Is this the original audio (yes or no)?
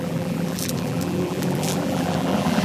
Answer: no